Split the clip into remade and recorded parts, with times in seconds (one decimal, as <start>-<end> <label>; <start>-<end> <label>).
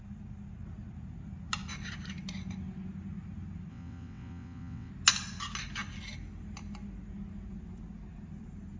0.0-3.7 recorded; 3.7-4.9 remade; 4.9-8.8 recorded